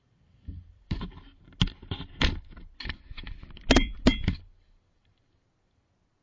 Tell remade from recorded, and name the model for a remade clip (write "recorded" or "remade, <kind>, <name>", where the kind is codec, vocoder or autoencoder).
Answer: recorded